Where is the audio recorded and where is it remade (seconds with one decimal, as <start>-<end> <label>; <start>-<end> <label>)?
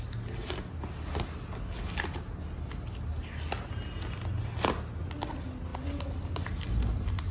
0.0-7.3 recorded